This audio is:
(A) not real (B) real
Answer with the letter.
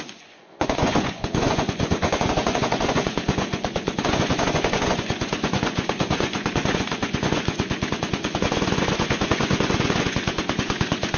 A